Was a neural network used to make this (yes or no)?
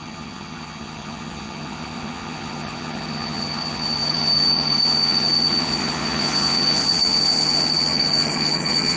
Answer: yes